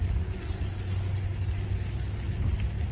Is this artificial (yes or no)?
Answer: no